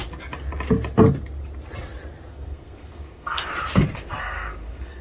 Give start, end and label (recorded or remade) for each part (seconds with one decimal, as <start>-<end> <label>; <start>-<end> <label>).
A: 0.0-2.3 recorded; 2.3-3.5 remade; 3.5-4.2 recorded; 4.2-5.0 remade